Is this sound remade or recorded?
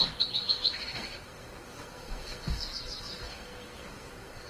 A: remade